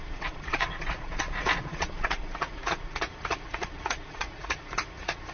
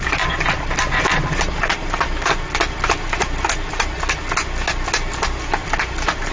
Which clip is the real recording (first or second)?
second